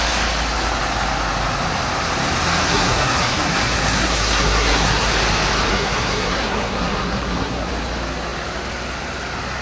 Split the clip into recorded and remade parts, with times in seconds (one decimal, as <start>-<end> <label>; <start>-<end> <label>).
0.0-2.6 recorded; 2.6-5.1 remade; 5.1-5.7 recorded; 5.7-7.7 remade; 7.7-9.6 recorded